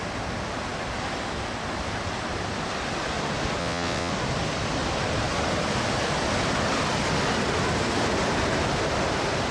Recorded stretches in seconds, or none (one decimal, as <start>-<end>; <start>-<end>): 0.0-3.6; 4.1-9.5

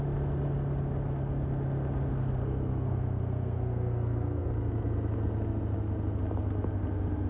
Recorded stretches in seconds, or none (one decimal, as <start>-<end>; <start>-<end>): 0.0-2.1; 4.5-7.3

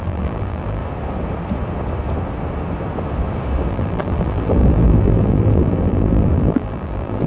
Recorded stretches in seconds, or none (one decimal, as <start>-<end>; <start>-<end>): 0.8-3.7

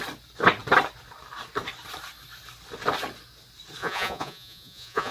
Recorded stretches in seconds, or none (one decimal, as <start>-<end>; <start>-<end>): 0.0-3.8